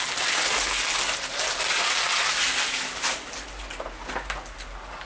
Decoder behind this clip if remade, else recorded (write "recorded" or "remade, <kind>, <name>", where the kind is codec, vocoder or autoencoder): recorded